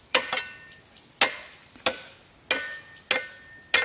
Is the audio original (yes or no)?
yes